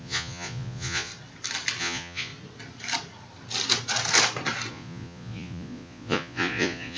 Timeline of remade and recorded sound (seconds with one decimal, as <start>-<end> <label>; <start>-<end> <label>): 0.0-1.1 remade; 1.1-1.8 recorded; 1.8-2.3 remade; 2.3-4.7 recorded; 4.7-7.0 remade

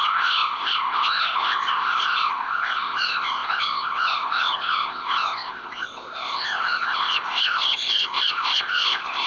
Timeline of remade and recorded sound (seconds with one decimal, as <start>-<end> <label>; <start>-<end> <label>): 0.0-9.3 remade

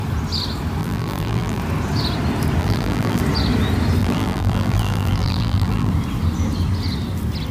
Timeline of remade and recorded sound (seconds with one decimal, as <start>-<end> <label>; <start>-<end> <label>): 0.0-0.8 recorded; 0.8-1.6 remade; 1.6-2.6 recorded; 2.6-3.2 remade; 3.2-4.0 recorded; 4.0-5.9 remade; 5.9-7.5 recorded

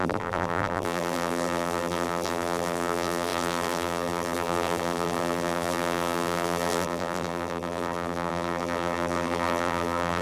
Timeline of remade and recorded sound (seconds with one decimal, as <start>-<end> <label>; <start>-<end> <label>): 0.0-10.2 remade